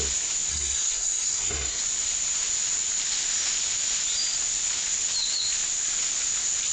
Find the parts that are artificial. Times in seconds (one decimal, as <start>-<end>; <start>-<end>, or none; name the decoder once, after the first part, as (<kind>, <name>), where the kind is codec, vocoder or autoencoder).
0.5-1.8 (codec, SNAC)